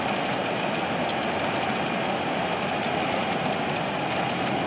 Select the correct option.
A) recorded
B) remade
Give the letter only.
A